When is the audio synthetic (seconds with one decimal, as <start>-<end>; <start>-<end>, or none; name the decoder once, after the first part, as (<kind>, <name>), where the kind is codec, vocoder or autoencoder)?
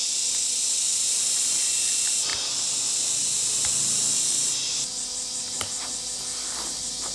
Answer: none